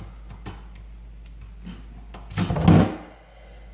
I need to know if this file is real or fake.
real